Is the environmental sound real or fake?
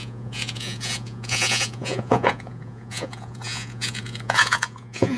fake